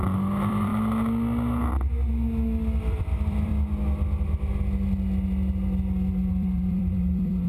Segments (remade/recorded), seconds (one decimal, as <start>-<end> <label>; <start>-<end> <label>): 0.0-0.7 remade; 0.7-2.8 recorded; 2.8-3.5 remade; 3.5-6.3 recorded; 6.3-7.5 remade

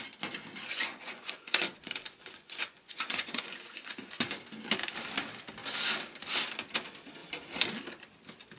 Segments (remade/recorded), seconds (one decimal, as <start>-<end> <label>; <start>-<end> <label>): 0.0-0.6 recorded; 0.6-4.3 remade; 4.3-8.6 recorded

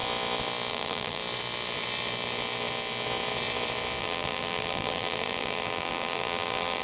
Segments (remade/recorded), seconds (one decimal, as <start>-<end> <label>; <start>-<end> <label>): 0.0-0.7 recorded; 0.7-1.2 remade; 1.2-4.0 recorded; 4.0-6.8 remade

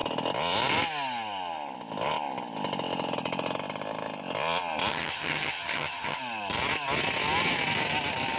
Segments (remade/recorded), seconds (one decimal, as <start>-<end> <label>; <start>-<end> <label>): 0.0-4.9 recorded; 4.9-6.2 remade; 6.2-8.4 recorded